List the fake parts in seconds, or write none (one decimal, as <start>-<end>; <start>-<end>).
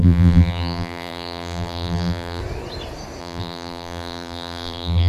0.0-2.4; 3.2-5.1